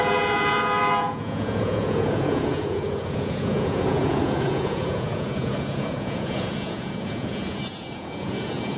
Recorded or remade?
remade